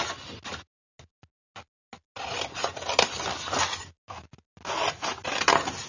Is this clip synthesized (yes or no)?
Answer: no